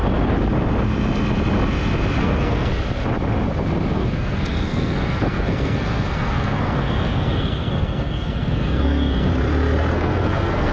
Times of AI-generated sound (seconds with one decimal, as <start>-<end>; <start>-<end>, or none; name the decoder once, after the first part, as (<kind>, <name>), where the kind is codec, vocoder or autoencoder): 2.2-2.7 (codec, SNAC); 3.9-9.3; 9.9-10.7